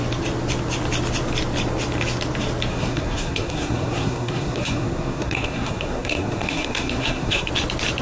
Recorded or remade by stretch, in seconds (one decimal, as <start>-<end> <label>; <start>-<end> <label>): 0.0-2.7 recorded; 2.7-7.5 remade; 7.5-8.0 recorded